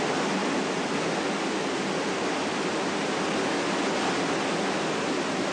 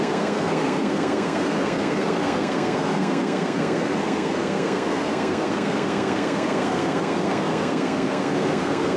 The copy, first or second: second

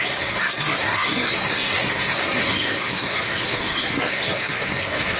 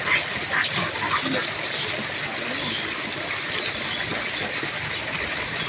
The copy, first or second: first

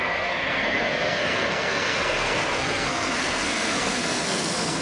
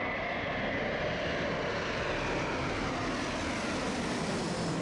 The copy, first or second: first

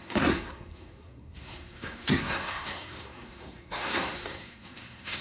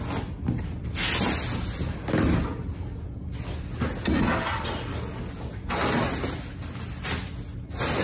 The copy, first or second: first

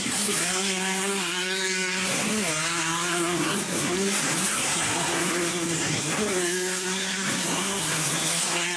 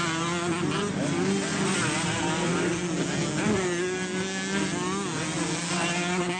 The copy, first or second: first